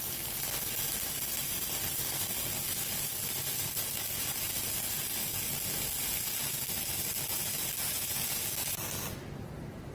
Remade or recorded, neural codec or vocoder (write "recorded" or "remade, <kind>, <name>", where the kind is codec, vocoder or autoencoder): recorded